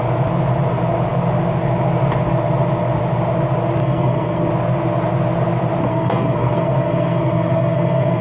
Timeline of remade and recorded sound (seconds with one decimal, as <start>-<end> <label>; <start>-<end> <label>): 0.0-3.8 recorded; 3.8-4.5 remade; 4.5-5.8 recorded; 5.8-8.2 remade